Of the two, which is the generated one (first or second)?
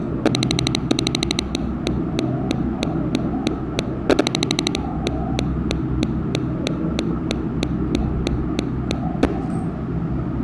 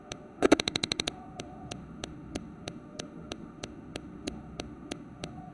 second